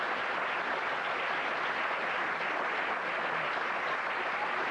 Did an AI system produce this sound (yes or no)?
no